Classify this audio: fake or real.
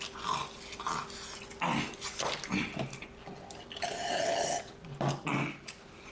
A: real